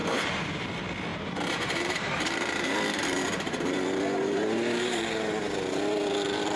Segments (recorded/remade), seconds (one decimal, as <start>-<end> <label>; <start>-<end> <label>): 0.0-0.6 remade; 0.6-1.1 recorded; 1.1-5.0 remade; 5.0-6.6 recorded

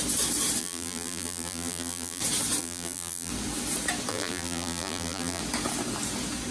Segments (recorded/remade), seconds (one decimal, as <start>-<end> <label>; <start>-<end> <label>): 0.0-0.6 recorded; 0.6-2.2 remade; 2.2-2.6 recorded; 2.6-3.3 remade; 3.3-4.1 recorded; 4.1-5.4 remade; 5.4-6.5 recorded

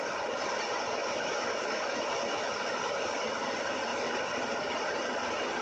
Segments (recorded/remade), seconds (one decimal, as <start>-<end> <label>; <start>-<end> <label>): 0.0-1.0 recorded; 1.0-2.5 remade; 2.5-5.6 recorded

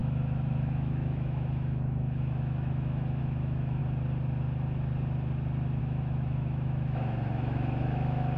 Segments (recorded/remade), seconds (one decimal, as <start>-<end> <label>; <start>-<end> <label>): 0.0-3.8 remade; 3.8-5.8 recorded; 5.8-8.4 remade

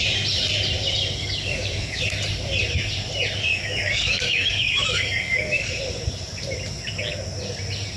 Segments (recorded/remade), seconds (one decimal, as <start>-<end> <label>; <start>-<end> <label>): 0.0-1.2 recorded; 1.2-2.0 remade; 2.0-3.5 recorded; 3.5-5.7 remade; 5.7-8.0 recorded

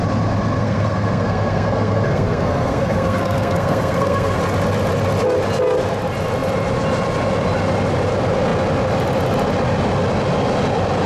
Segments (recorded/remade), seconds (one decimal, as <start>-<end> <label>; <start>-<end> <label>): 0.0-0.6 recorded; 0.6-4.4 remade; 4.4-11.1 recorded